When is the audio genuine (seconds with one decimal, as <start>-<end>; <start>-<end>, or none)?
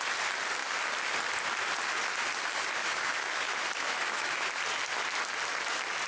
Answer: 0.0-2.8; 4.6-6.1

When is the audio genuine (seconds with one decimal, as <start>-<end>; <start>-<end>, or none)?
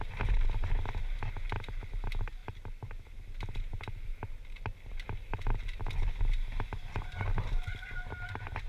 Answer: 0.0-8.7